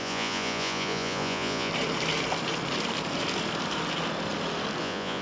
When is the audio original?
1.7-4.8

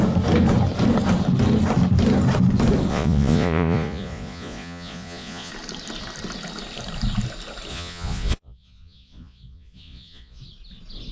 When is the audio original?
0.0-2.9; 5.5-7.7; 10.4-11.1

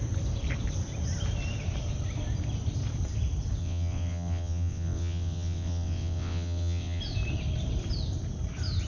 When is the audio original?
0.0-3.6; 7.0-8.9

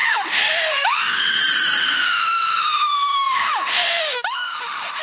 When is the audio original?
1.4-1.8